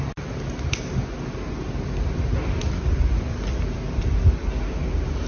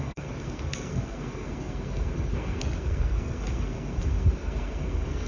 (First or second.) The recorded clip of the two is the first